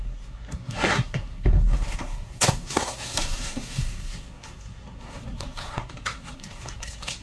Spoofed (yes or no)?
yes